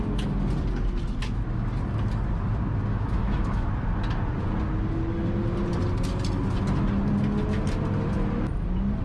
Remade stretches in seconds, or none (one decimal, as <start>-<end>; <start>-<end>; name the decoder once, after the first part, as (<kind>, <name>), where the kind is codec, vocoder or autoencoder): 2.9-3.7 (autoencoder, DAC-VAE)